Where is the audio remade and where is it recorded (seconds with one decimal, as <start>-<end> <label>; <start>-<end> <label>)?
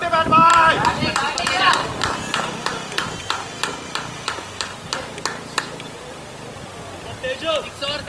0.0-8.1 recorded